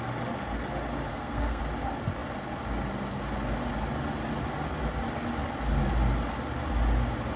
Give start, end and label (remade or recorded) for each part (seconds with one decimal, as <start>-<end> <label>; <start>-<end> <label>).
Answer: 0.0-1.1 recorded; 1.1-1.6 remade; 1.6-7.4 recorded